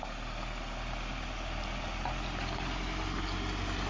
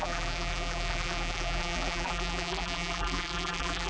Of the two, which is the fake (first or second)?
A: second